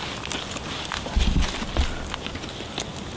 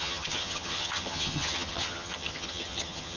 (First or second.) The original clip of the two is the first